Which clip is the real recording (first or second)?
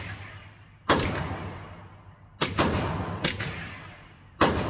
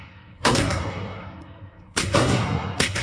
first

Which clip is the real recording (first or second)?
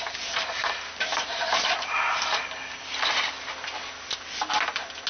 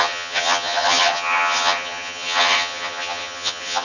first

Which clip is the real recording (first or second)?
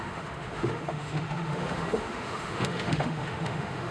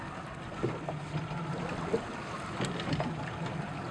second